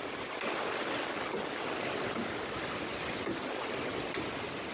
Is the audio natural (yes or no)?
yes